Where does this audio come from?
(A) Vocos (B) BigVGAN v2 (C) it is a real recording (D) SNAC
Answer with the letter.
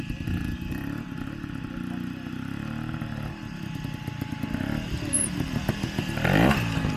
C